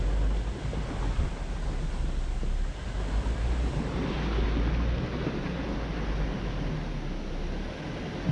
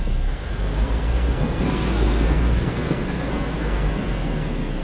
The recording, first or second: first